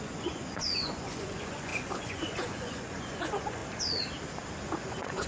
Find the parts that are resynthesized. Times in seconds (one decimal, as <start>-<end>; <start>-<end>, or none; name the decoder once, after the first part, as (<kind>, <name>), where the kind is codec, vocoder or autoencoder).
0.0-3.6 (vocoder, Vocos); 4.6-5.3